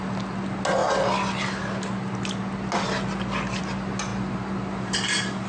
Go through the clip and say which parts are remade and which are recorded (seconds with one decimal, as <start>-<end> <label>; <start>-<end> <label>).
0.0-5.5 recorded